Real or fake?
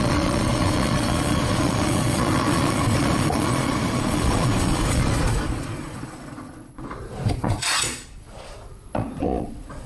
fake